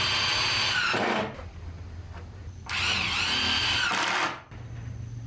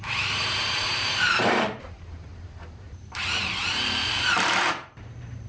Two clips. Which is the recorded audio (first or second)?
first